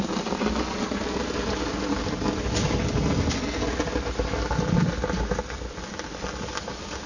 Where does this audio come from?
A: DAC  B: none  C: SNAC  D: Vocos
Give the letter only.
B